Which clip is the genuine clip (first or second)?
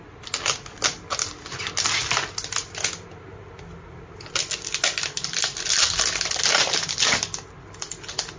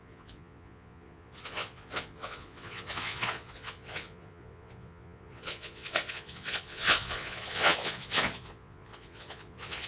first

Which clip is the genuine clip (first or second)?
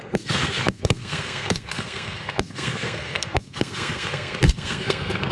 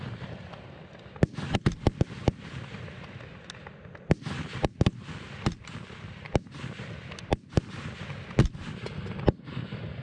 second